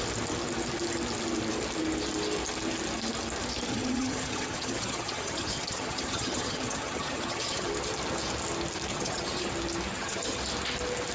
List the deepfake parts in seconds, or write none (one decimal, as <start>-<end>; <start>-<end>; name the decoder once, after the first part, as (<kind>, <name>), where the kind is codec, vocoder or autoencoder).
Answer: 3.7-7.7 (vocoder, HiFi-GAN); 8.9-9.5; 9.9-10.4